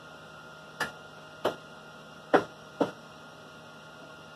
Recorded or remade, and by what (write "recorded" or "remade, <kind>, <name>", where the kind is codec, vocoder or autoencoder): recorded